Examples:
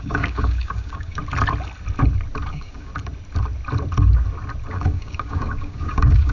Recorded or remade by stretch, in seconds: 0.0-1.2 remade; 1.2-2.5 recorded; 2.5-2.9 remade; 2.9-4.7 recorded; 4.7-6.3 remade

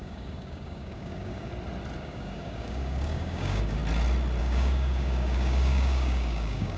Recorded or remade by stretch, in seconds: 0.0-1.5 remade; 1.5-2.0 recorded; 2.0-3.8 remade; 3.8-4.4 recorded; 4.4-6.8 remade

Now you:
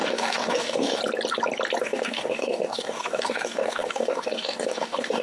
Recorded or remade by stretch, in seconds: 0.0-1.0 remade; 1.0-1.8 recorded; 1.8-5.2 remade